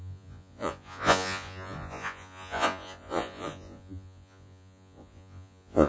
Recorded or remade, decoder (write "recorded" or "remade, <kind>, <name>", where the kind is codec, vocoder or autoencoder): remade, vocoder, Vocos